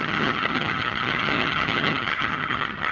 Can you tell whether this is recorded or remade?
remade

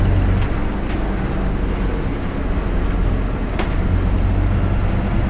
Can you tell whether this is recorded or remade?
recorded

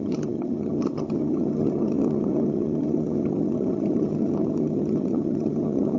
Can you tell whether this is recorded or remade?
remade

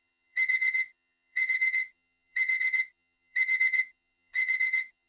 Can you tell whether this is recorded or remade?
remade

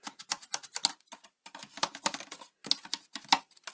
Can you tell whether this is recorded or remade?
recorded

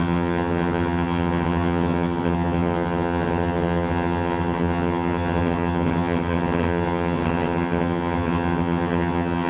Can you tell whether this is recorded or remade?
remade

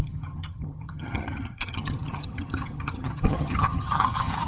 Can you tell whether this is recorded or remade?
remade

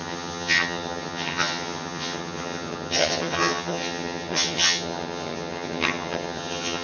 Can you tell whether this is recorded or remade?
remade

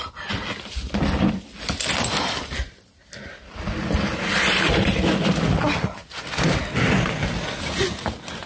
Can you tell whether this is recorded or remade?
recorded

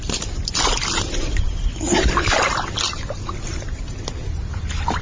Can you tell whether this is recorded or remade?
recorded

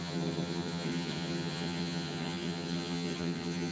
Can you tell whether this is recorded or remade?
remade